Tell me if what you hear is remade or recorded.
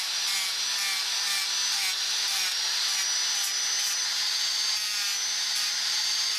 recorded